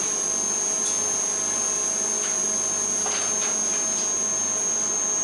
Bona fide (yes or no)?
yes